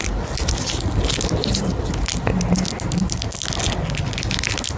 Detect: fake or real real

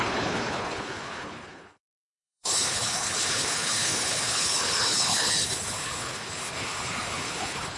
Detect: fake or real fake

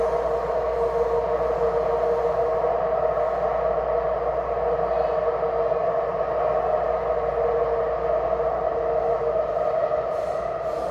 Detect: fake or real real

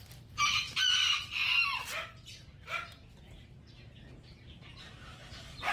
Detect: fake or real real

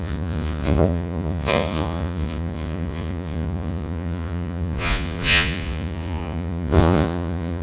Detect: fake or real fake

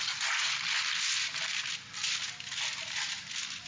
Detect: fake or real real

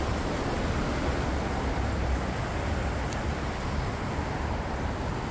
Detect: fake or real real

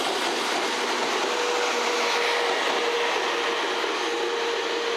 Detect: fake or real real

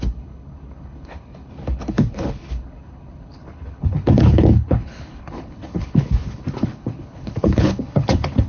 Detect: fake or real fake